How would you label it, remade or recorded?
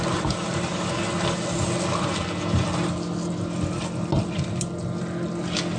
recorded